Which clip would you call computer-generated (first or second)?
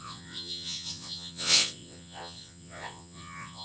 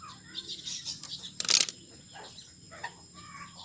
first